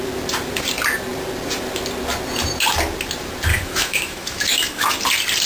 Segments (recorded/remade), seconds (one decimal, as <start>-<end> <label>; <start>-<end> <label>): 0.0-3.5 recorded; 3.5-4.9 remade; 4.9-5.5 recorded